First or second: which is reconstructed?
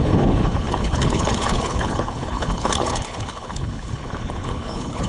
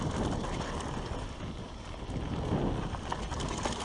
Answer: first